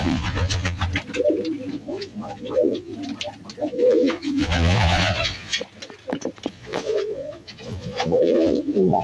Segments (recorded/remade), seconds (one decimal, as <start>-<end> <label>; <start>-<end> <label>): 0.0-0.8 remade; 0.8-1.7 recorded; 1.7-2.9 remade; 2.9-3.6 recorded; 3.6-5.6 remade; 5.6-6.5 recorded; 6.5-9.0 remade

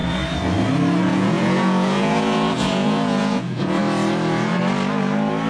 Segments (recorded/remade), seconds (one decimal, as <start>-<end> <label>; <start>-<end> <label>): 0.0-1.1 recorded; 1.1-3.8 remade; 3.8-5.5 recorded

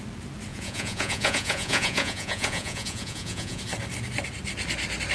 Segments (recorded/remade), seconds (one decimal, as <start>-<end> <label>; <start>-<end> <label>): 0.0-0.5 recorded; 0.5-3.6 remade; 3.6-5.1 recorded

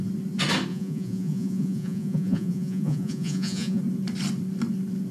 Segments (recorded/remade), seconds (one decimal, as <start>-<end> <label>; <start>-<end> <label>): 0.0-0.7 recorded; 0.7-3.8 remade; 3.8-5.1 recorded

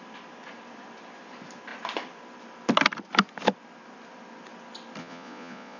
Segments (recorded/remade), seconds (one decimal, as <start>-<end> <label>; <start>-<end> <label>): 0.0-5.0 recorded; 5.0-5.8 remade

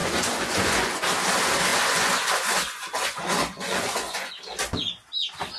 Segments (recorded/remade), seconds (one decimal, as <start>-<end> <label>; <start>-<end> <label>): 0.0-1.0 remade; 1.0-1.7 recorded; 1.7-4.3 remade; 4.3-5.6 recorded

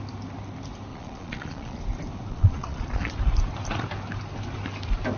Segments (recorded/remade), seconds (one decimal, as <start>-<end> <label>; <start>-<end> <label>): 0.0-0.9 recorded; 0.9-1.8 remade; 1.8-2.3 recorded; 2.3-3.1 remade; 3.1-5.2 recorded